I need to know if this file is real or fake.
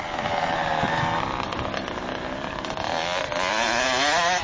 real